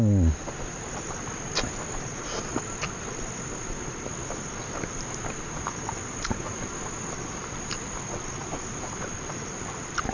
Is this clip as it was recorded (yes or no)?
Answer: yes